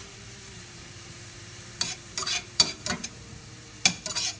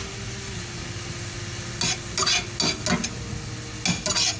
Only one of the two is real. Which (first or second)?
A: second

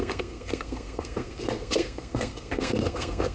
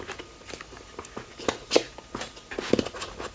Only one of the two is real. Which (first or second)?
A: second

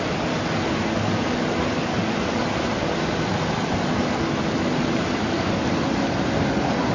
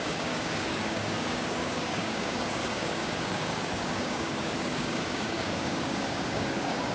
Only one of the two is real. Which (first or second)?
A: first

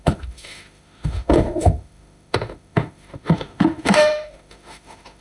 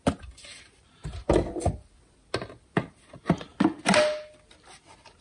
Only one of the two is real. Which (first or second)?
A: second